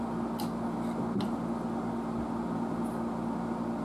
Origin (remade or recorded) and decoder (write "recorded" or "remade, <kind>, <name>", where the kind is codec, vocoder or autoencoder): recorded